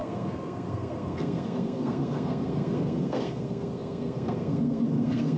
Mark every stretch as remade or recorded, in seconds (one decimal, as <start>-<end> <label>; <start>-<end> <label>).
0.0-5.4 remade